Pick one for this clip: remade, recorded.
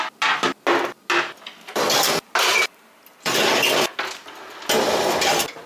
recorded